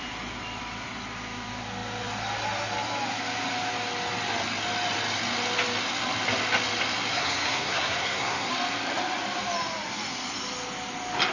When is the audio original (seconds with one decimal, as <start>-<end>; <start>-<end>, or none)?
0.0-7.1; 8.5-11.3